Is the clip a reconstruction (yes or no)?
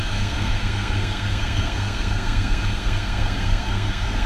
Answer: yes